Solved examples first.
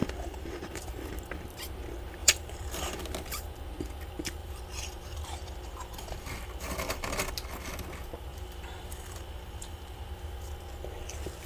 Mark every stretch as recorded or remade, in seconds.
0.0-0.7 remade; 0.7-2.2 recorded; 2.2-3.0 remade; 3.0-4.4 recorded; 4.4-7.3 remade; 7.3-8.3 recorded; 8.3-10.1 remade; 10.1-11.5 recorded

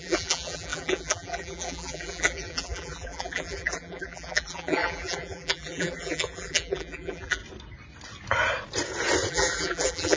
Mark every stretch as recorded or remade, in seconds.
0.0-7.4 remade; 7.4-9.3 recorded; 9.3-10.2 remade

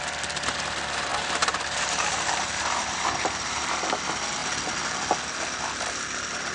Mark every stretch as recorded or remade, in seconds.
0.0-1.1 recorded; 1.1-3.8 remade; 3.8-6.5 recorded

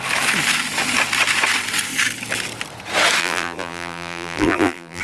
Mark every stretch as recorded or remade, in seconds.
0.0-3.2 recorded; 3.2-5.0 remade

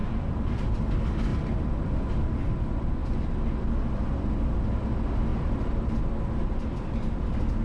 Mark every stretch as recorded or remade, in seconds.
0.0-0.9 remade; 0.9-1.3 recorded; 1.3-2.1 remade; 2.1-3.0 recorded; 3.0-3.8 remade; 3.8-5.3 recorded; 5.3-6.0 remade; 6.0-7.6 recorded